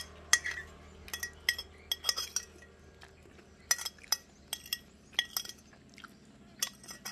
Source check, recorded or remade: recorded